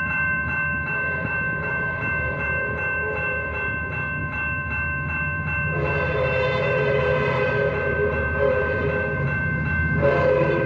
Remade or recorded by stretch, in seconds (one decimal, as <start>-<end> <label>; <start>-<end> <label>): 0.0-10.7 remade